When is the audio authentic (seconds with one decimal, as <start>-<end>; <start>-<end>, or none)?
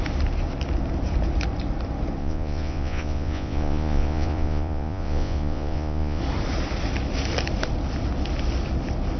0.0-2.2; 6.2-9.2